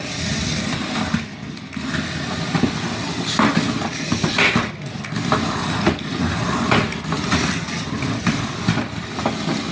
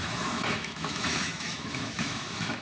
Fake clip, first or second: second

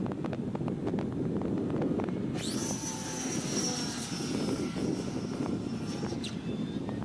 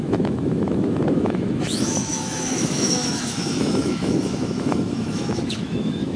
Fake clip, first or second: second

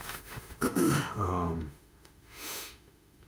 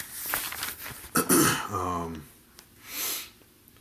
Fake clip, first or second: first